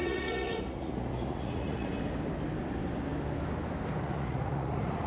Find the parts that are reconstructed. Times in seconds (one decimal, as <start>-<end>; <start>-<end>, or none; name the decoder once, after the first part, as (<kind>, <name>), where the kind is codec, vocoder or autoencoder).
0.0-1.9 (vocoder, Vocos); 4.0-5.1